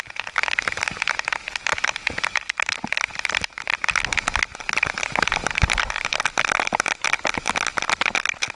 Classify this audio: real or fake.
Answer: real